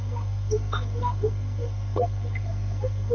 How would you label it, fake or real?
fake